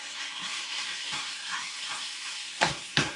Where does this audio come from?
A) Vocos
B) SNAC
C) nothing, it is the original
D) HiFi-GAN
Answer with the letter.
B